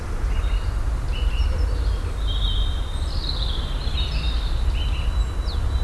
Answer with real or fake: real